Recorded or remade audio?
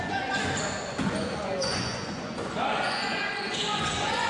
remade